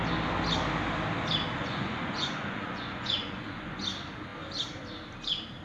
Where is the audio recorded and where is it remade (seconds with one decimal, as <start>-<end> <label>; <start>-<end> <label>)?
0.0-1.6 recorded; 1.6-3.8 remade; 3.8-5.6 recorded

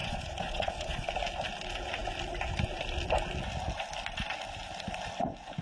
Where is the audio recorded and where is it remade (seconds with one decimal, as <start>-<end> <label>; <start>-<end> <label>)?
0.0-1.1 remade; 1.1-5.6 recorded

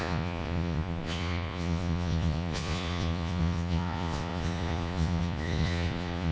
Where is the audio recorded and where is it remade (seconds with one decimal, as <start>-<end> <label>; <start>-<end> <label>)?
0.0-6.3 remade

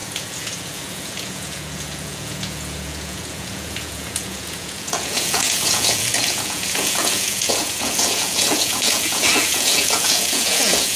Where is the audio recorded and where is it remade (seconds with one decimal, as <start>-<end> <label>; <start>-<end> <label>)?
0.0-11.0 remade

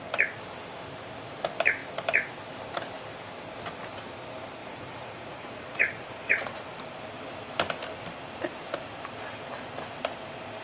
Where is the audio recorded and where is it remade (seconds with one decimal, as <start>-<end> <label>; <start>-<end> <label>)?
0.0-4.6 recorded; 4.6-6.6 remade; 6.6-10.6 recorded